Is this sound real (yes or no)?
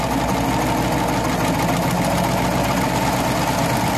yes